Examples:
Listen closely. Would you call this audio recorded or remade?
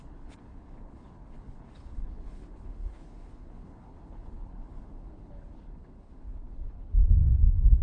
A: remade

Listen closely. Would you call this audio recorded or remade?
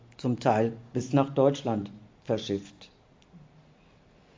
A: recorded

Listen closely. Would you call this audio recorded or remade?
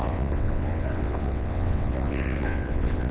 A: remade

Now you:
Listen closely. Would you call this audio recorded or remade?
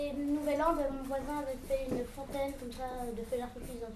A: recorded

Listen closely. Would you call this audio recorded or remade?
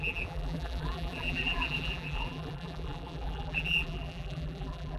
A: remade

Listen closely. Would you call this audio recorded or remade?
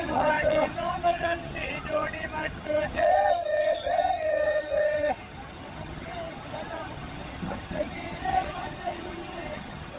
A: remade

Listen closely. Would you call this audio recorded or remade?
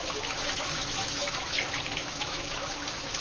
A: remade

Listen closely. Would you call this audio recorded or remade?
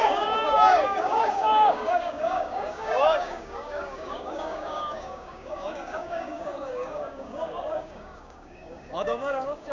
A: remade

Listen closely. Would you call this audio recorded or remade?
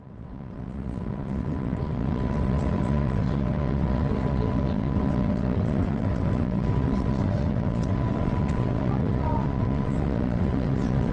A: remade